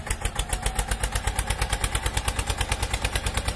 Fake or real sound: real